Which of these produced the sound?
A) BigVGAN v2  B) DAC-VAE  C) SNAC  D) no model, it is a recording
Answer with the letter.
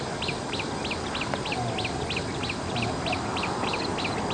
D